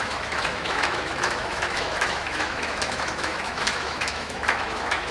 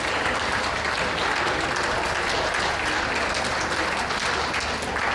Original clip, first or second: second